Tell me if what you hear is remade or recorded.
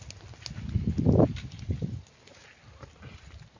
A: recorded